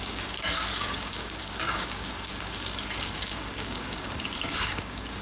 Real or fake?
fake